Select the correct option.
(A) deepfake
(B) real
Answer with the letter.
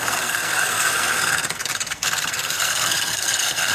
A